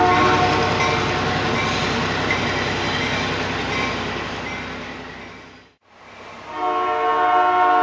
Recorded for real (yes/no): yes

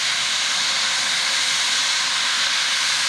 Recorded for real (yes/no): yes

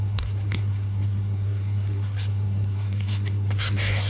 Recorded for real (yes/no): no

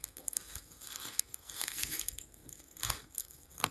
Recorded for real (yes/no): no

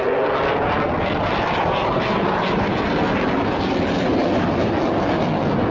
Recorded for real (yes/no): yes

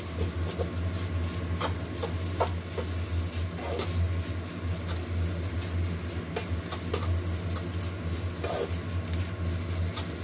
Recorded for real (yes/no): yes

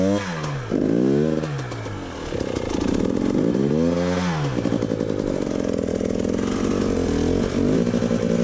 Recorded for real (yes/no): yes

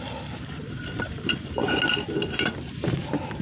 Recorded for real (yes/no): yes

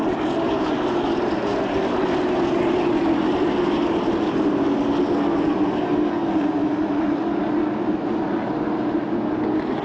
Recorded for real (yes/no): yes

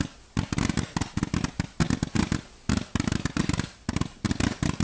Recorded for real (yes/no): yes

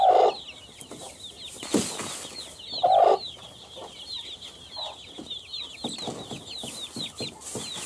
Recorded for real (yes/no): yes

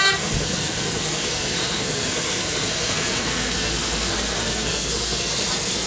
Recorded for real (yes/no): no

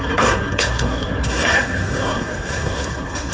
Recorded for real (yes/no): no